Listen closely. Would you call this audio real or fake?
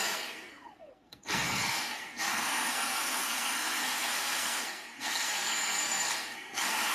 fake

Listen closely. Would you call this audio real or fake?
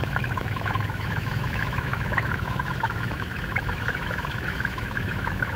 fake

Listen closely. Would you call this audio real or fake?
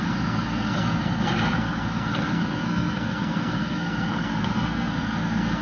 fake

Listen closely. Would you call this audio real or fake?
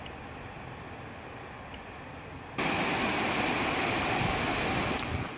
real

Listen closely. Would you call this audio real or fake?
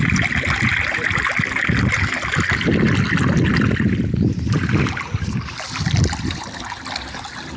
real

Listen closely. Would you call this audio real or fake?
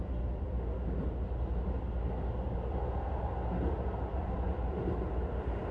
real